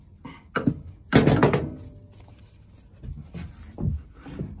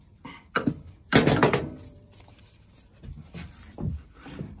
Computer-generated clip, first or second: second